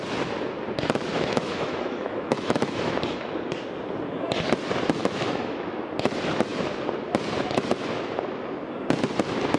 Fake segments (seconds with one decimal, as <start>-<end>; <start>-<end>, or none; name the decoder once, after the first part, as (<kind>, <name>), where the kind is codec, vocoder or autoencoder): 1.1-3.3 (autoencoder, DAC-VAE); 5.0-5.8